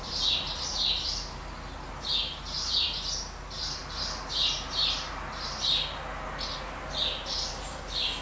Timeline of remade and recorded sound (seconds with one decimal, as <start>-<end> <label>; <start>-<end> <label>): 0.0-8.2 recorded